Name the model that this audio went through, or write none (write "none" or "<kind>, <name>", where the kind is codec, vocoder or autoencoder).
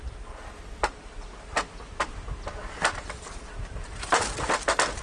none